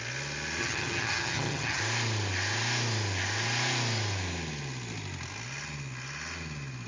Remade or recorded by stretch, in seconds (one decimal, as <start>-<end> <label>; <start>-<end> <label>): 0.0-0.6 recorded; 0.6-1.8 remade; 1.8-6.9 recorded